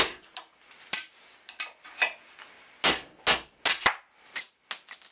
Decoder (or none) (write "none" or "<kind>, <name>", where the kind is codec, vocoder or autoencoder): none